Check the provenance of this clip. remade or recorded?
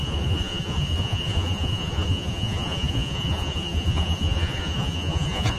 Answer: remade